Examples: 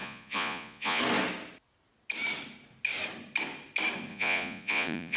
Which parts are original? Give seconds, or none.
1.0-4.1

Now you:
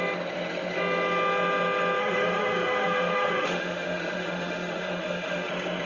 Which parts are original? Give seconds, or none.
0.0-2.0; 5.5-5.9

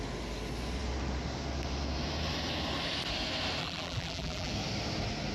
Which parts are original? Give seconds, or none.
0.0-3.6; 4.5-5.3

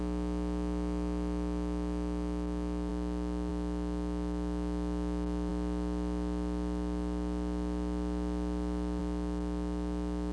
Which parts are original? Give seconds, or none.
0.0-10.3